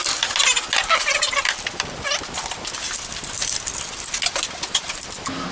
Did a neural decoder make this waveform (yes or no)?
no